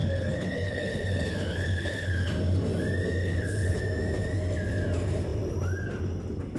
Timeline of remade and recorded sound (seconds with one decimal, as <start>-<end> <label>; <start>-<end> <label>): 0.0-2.3 remade; 2.3-3.2 recorded; 3.2-3.8 remade; 3.8-6.6 recorded